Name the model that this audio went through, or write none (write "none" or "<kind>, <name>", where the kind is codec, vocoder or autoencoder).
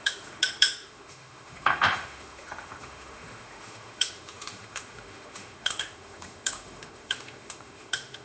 autoencoder, DAC-VAE